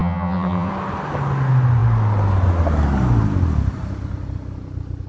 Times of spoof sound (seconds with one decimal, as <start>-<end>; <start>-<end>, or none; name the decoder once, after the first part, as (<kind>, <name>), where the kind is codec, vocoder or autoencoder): 0.0-0.7 (vocoder, HiFi-GAN)